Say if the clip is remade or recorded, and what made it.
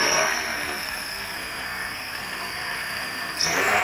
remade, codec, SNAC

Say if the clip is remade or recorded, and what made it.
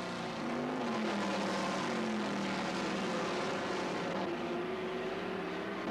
recorded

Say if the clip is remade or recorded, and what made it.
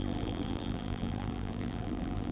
remade, vocoder, BigVGAN v2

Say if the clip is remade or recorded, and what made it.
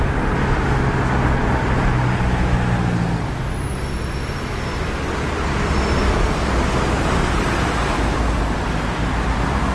recorded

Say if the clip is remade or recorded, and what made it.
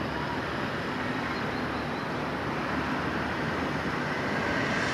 recorded